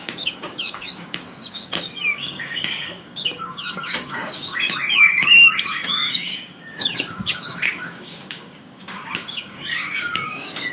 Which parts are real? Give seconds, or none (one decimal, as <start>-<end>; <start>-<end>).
none

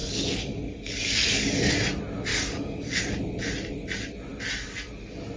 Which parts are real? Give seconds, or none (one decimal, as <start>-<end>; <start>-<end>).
1.7-2.3; 3.0-5.4

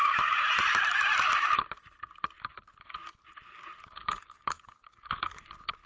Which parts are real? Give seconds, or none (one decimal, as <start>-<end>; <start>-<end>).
0.0-4.0; 5.5-5.9

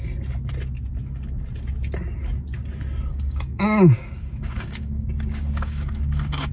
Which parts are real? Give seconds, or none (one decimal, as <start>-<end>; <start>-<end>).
0.0-3.1

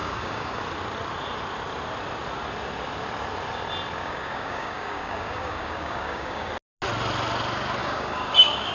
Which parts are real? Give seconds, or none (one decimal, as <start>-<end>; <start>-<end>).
0.6-4.0; 6.5-7.8

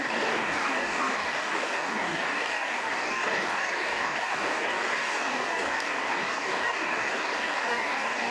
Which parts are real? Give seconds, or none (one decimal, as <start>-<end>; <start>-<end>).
none

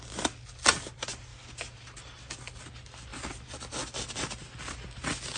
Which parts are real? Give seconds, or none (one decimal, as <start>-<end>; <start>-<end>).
0.0-5.4